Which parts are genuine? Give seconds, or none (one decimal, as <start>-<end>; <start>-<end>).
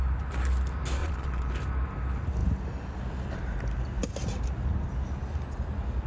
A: 0.0-1.0; 1.5-6.1